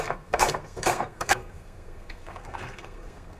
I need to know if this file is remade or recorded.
remade